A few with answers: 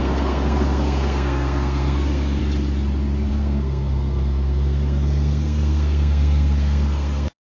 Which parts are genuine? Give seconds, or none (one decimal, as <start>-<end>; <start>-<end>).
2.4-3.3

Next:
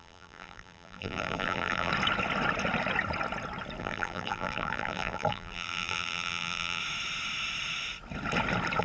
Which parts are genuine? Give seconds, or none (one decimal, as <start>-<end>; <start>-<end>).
1.9-3.8; 6.8-8.8

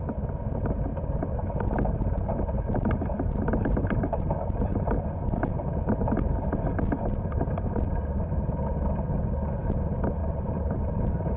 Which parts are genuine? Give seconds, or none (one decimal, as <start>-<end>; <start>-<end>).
0.0-2.3; 5.7-10.2